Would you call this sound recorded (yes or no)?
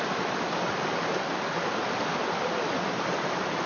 yes